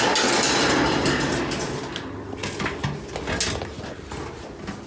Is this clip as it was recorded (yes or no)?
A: yes